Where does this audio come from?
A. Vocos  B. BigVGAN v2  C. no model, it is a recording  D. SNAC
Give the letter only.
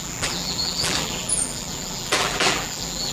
B